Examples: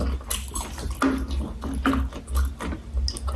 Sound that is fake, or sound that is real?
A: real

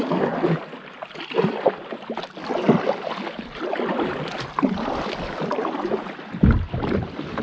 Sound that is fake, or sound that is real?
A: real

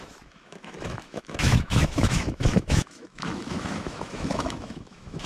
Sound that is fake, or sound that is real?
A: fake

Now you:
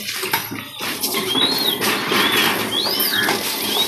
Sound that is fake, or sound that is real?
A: real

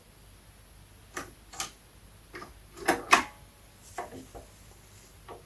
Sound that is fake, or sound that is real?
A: real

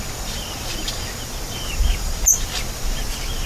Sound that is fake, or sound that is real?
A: real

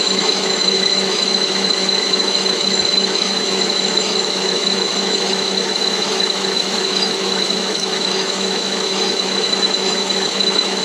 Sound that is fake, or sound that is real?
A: fake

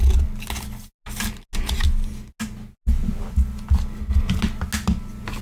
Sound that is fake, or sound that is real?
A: real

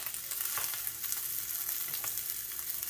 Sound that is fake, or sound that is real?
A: real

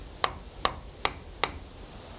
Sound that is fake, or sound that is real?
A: real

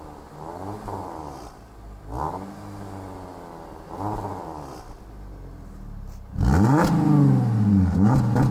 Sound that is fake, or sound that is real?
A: real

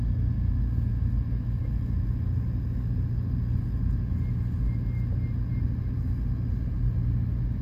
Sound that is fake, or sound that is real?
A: real